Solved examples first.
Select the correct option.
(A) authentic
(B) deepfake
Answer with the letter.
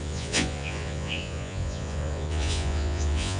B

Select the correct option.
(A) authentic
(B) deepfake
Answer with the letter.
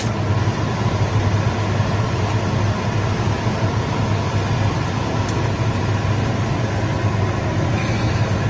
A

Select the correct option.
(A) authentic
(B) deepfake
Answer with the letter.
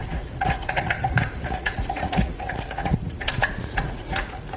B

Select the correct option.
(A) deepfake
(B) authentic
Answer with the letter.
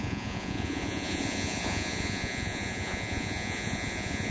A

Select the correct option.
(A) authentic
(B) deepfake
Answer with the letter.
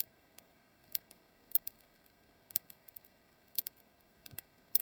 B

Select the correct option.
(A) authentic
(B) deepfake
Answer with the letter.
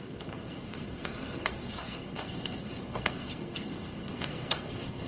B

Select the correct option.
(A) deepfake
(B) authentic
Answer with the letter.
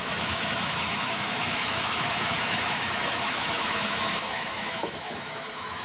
A